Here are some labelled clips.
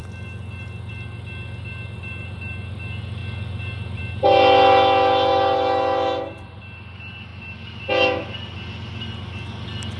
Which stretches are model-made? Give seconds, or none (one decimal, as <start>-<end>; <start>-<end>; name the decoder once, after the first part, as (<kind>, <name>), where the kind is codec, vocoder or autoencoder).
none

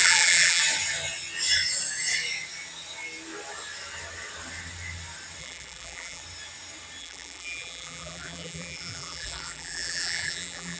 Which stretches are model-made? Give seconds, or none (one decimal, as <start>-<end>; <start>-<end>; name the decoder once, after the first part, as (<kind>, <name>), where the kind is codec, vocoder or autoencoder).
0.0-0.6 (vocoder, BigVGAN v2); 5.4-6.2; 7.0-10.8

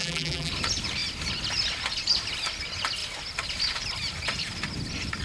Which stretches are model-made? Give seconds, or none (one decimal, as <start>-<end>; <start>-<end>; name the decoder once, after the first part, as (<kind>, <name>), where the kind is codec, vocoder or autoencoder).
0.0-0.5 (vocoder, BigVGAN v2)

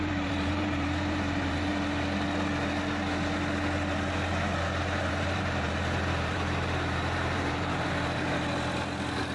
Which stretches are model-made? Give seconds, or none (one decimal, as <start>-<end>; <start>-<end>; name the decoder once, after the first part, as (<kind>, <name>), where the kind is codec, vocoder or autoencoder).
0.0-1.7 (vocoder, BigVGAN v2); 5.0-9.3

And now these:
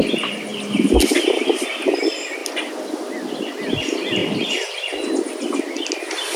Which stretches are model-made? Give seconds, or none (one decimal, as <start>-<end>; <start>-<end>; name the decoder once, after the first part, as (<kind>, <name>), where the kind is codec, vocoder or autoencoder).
0.5-2.0 (vocoder, BigVGAN v2); 4.2-4.8